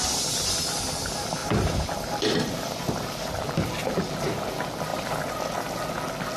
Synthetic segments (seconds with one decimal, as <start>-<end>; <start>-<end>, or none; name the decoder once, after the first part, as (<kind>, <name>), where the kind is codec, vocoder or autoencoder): 1.4-4.3 (vocoder, BigVGAN v2)